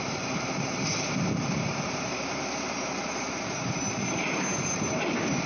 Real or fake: real